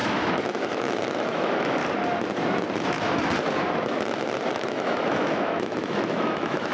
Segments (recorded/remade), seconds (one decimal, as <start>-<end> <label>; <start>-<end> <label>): 0.0-1.8 remade; 1.8-4.5 recorded; 4.5-6.7 remade